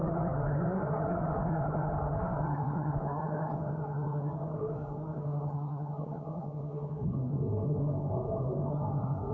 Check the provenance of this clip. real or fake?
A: fake